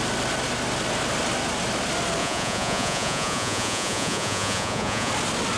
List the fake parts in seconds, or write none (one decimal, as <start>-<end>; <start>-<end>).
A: 2.2-5.1